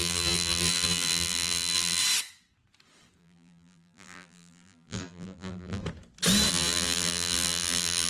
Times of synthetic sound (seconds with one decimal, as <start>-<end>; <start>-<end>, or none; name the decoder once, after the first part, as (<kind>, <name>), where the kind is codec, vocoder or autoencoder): 0.0-2.0 (vocoder, BigVGAN v2); 3.2-5.8; 6.5-8.1

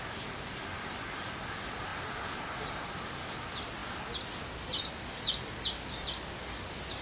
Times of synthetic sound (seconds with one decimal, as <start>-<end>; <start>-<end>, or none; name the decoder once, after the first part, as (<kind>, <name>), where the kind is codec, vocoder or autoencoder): none

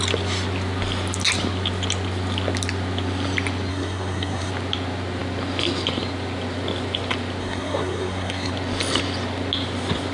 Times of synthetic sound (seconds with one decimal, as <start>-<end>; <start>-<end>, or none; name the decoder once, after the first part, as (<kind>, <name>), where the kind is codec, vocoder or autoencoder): 3.7-4.5 (codec, SNAC); 7.4-8.5

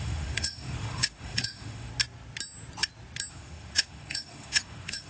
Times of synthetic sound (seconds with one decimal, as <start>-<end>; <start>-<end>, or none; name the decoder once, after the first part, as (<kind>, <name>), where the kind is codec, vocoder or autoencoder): 0.0-1.9 (autoencoder, DAC-VAE); 3.3-5.1